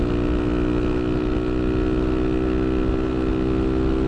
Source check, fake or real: real